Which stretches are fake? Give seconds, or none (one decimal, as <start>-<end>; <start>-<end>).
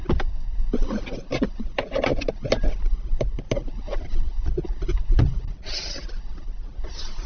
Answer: none